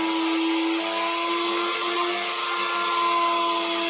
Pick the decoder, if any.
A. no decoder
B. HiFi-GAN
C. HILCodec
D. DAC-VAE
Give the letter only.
A